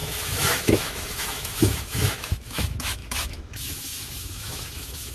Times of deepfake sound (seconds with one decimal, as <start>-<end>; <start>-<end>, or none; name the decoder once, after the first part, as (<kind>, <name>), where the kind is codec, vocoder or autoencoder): 0.0-5.1 (autoencoder, DAC-VAE)

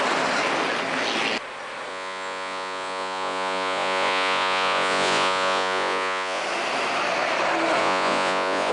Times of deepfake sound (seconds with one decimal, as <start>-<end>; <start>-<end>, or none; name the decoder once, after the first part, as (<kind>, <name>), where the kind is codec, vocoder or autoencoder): 1.9-6.4 (vocoder, Vocos); 7.8-8.7